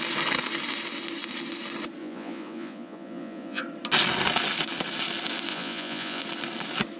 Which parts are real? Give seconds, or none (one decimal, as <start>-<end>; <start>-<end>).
0.0-2.0; 3.6-5.5; 6.2-7.0